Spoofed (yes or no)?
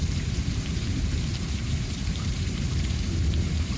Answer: yes